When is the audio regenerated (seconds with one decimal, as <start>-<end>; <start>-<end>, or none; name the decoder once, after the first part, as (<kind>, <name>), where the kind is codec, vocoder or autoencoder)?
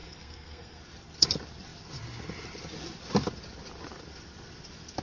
0.0-0.8 (codec, SNAC)